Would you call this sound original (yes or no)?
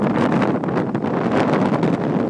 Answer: yes